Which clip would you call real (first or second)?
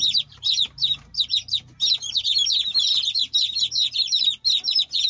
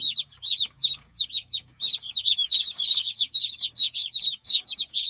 first